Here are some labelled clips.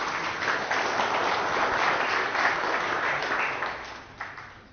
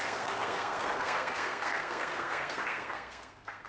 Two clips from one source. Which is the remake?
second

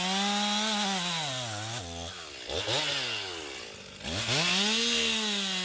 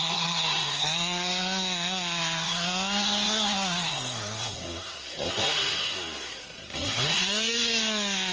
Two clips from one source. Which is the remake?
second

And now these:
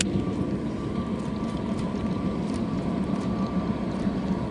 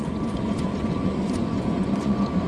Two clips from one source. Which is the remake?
second